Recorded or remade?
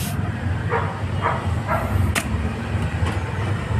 recorded